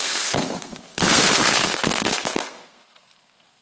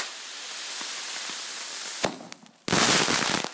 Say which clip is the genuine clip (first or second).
second